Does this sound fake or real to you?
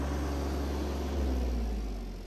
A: real